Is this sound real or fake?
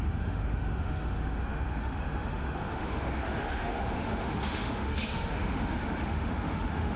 fake